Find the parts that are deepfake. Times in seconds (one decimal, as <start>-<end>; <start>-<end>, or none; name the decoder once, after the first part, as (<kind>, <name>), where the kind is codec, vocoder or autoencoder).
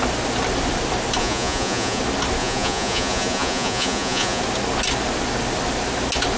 1.2-2.0 (vocoder, Vocos); 2.4-4.4